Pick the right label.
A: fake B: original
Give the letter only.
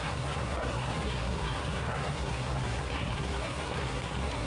A